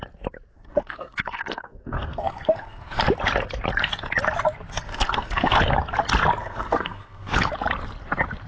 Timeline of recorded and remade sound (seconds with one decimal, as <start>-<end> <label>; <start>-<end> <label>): 0.0-0.5 recorded; 0.5-3.0 remade; 3.0-4.9 recorded; 4.9-5.6 remade; 5.6-6.4 recorded; 6.4-7.4 remade; 7.4-8.5 recorded